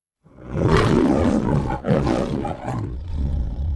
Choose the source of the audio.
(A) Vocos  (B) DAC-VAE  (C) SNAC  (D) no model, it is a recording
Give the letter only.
A